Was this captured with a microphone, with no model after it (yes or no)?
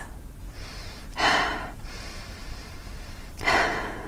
no